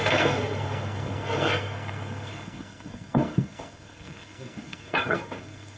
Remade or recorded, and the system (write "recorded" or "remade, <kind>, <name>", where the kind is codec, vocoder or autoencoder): remade, codec, SNAC